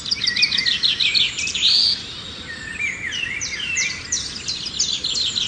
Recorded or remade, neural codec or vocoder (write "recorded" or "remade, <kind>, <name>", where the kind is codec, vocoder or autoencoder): remade, vocoder, BigVGAN v2